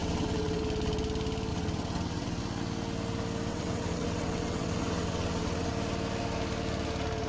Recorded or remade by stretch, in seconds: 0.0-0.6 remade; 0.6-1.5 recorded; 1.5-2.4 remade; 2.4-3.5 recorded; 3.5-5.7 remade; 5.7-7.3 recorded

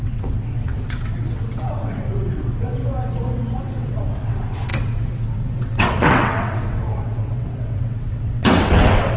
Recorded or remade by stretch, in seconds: 0.0-2.8 remade; 2.8-3.6 recorded; 3.6-9.2 remade

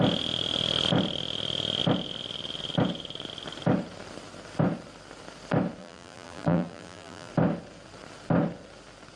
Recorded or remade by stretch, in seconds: 0.0-5.8 recorded; 5.8-7.3 remade; 7.3-9.2 recorded

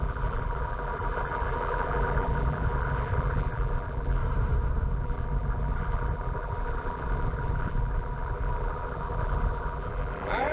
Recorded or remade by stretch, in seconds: 0.0-4.2 remade; 4.2-4.9 recorded; 4.9-10.5 remade

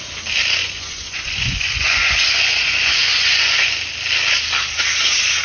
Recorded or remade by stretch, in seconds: 0.0-0.6 recorded; 0.6-3.8 remade; 3.8-5.4 recorded

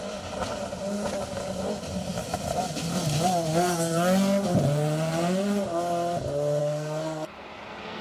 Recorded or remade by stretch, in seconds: 0.0-6.6 recorded; 6.6-8.0 remade

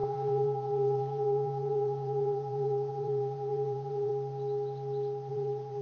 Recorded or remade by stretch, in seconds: 0.0-4.1 remade; 4.1-5.3 recorded; 5.3-5.8 remade

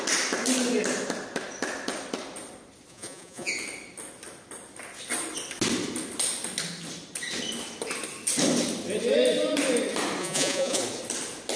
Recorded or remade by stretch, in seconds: 0.0-2.9 recorded; 2.9-3.5 remade; 3.5-10.2 recorded; 10.2-10.8 remade; 10.8-11.6 recorded